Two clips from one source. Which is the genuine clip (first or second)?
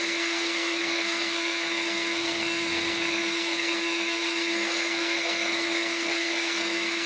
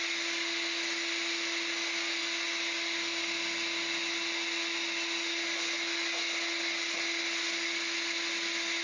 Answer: second